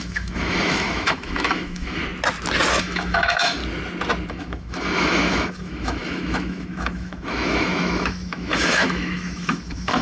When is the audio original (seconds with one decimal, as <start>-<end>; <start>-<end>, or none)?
2.0-2.8; 3.6-4.3